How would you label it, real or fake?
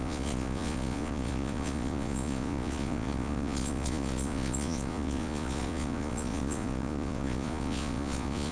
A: fake